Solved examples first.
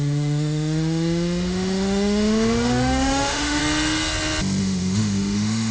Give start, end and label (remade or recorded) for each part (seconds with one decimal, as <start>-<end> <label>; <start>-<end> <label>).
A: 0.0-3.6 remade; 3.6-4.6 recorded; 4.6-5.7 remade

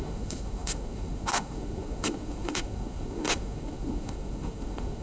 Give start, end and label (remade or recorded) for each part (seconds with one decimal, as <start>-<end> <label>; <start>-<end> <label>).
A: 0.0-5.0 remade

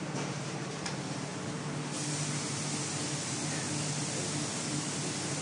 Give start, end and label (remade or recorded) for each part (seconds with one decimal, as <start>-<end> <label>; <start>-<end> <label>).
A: 0.0-5.4 recorded

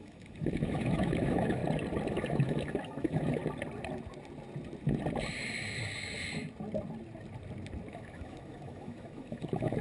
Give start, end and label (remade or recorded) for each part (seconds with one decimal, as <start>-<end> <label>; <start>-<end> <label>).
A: 0.0-1.6 remade; 1.6-2.1 recorded; 2.1-3.4 remade; 3.4-7.9 recorded; 7.9-9.8 remade